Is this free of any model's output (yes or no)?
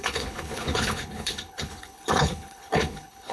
no